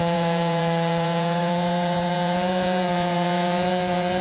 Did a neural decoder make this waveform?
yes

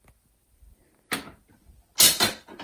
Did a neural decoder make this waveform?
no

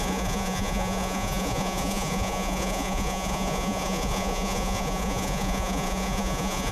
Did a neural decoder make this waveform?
yes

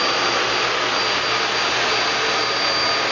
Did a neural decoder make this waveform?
no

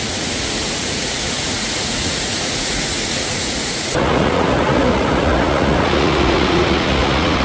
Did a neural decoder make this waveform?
yes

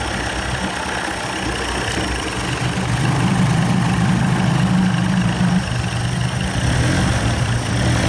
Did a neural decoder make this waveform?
no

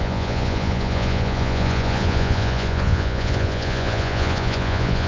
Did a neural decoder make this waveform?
yes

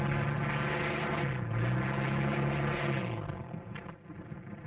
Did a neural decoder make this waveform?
no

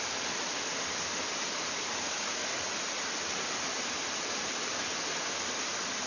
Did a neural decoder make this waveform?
no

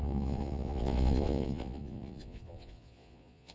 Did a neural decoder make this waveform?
yes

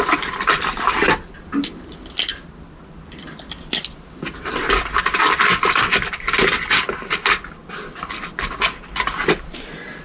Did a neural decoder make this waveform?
no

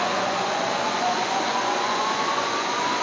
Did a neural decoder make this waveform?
yes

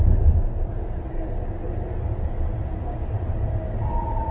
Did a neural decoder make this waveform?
no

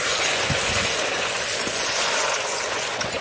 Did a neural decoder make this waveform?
yes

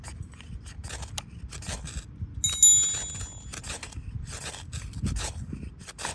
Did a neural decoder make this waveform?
no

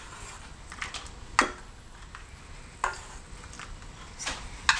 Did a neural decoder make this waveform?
no